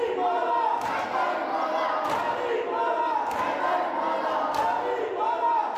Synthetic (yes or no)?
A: no